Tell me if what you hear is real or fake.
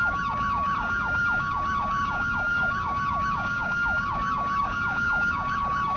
fake